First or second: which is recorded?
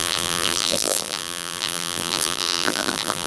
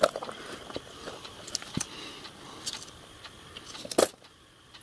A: second